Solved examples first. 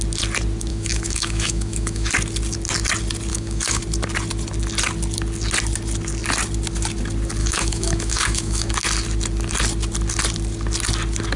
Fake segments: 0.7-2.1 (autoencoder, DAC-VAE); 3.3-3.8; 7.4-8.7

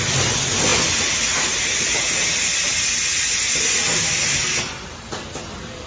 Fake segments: none

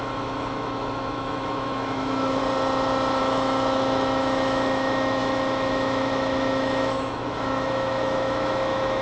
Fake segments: 0.0-2.4 (autoencoder, DAC-VAE); 3.2-9.0

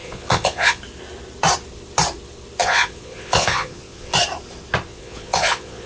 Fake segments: 0.0-0.8 (vocoder, Vocos); 2.6-4.2; 4.9-5.9